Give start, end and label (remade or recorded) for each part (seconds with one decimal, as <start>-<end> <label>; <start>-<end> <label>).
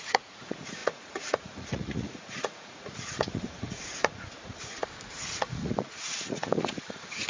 0.0-4.8 remade; 4.8-5.4 recorded; 5.4-7.3 remade